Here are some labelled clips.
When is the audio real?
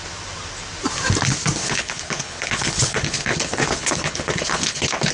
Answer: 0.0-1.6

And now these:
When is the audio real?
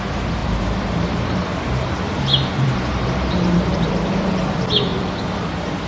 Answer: 0.0-0.4; 3.9-4.9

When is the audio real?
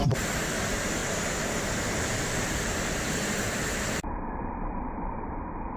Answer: none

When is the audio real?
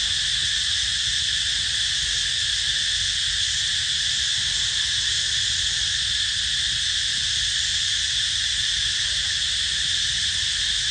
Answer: 0.0-10.9